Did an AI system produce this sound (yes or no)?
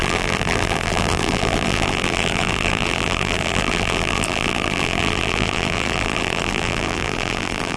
yes